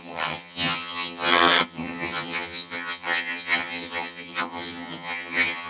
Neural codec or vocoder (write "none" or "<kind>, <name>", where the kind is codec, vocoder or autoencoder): vocoder, HiFi-GAN